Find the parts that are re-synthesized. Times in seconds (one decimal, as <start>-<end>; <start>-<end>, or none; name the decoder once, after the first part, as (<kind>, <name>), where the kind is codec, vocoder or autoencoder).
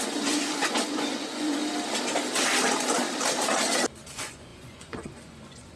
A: 0.0-1.6 (vocoder, Vocos); 4.1-5.8